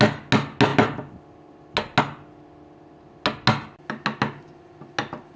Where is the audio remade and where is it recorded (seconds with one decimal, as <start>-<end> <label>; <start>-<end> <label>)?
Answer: 0.0-5.4 recorded